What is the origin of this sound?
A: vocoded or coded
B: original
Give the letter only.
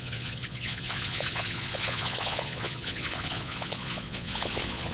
A